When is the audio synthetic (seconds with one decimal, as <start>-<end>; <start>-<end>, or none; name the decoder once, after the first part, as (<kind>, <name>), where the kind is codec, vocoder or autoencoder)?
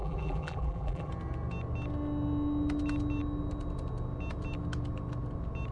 0.0-1.1 (vocoder, BigVGAN v2)